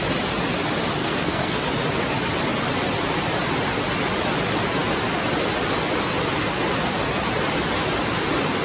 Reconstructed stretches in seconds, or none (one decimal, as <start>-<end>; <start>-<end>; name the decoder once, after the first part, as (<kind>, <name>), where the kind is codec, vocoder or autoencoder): 1.0-1.6 (codec, SNAC)